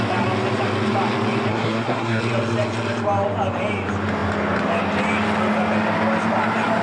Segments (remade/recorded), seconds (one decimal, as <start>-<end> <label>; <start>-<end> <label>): 0.0-1.5 recorded; 1.5-2.2 remade; 2.2-6.8 recorded